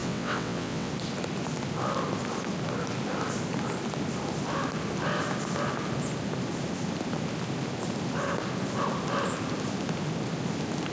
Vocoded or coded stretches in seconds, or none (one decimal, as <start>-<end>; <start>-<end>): 0.0-0.9